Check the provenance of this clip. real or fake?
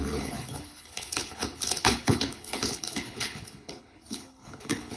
fake